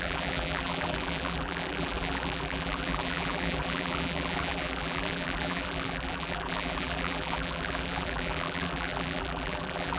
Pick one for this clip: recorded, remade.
remade